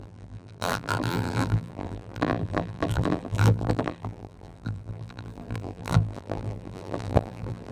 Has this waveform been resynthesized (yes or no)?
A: yes